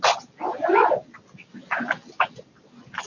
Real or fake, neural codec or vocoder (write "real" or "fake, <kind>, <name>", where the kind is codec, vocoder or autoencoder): real